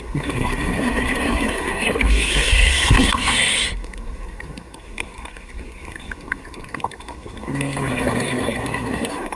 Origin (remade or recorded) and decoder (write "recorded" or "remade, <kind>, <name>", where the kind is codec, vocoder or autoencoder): remade, codec, SNAC